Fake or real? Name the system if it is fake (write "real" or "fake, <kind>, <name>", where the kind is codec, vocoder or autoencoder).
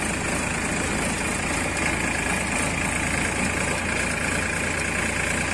real